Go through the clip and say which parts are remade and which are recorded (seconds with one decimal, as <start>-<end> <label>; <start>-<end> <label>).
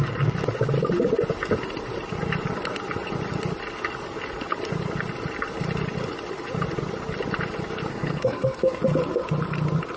0.0-7.9 recorded; 7.9-8.8 remade; 8.8-10.0 recorded